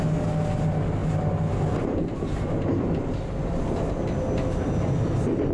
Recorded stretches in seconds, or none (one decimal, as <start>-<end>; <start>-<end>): 0.0-5.5